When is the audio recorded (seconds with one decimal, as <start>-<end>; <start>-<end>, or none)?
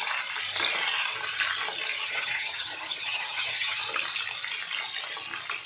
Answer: 0.0-1.9; 3.8-5.7